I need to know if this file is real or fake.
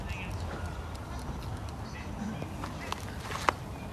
real